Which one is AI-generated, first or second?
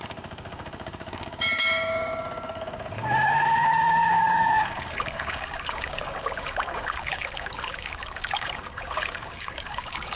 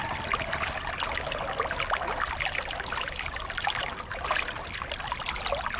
first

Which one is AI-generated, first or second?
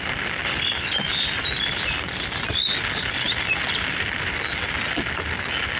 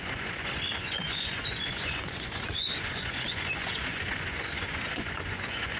second